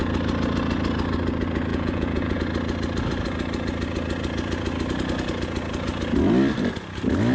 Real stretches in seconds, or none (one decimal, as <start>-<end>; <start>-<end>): 0.0-1.7; 2.4-7.3